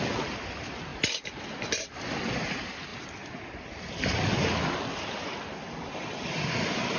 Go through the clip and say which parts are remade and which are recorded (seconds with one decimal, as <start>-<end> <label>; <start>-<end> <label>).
0.0-7.0 recorded